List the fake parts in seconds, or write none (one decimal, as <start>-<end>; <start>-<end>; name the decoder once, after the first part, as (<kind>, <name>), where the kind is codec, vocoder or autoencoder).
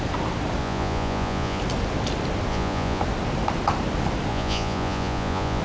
0.6-1.6 (vocoder, Vocos); 2.5-3.0; 4.3-5.6